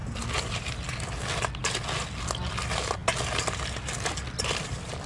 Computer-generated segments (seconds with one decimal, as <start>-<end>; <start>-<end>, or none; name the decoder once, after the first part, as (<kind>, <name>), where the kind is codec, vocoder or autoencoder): none